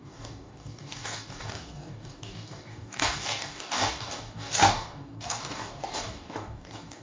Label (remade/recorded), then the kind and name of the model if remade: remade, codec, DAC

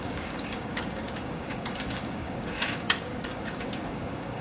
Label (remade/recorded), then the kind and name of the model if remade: remade, codec, DAC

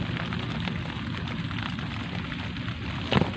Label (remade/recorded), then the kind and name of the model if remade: recorded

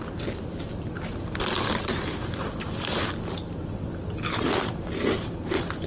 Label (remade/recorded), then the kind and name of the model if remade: recorded